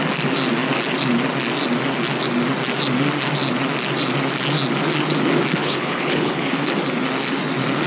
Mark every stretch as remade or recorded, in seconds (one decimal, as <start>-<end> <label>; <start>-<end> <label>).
0.0-5.6 recorded; 5.6-6.7 remade; 6.7-7.9 recorded